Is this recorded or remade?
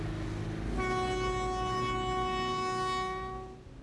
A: recorded